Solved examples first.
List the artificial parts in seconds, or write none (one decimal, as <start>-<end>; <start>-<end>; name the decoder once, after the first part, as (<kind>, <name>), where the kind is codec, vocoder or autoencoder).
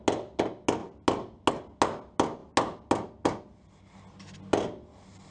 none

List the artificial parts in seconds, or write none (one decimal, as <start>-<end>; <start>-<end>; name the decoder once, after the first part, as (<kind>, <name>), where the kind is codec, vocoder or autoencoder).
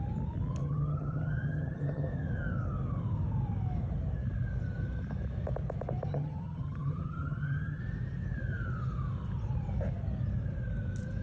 0.6-2.1 (vocoder, HiFi-GAN); 6.1-7.8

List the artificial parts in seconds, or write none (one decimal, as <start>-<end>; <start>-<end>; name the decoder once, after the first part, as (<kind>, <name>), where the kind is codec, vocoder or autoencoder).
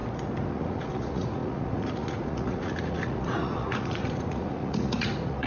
0.5-5.5 (vocoder, Vocos)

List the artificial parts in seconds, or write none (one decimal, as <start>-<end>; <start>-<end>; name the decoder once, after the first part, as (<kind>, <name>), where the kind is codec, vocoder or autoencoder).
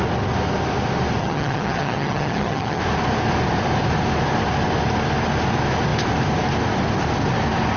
1.2-2.8 (vocoder, HiFi-GAN)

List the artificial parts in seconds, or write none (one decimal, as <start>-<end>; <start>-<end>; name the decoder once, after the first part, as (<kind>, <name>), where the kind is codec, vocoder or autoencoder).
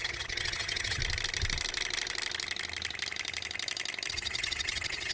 0.0-1.0 (vocoder, HiFi-GAN); 4.1-5.1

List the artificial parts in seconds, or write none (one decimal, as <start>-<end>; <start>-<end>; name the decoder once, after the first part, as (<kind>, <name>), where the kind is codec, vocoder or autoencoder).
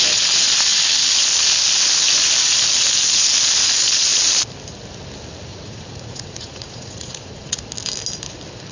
5.5-7.6 (vocoder, Vocos)